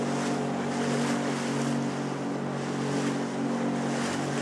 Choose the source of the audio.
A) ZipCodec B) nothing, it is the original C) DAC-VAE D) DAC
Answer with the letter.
B